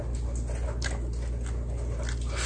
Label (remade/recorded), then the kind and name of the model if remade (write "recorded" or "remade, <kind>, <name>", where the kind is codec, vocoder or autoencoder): recorded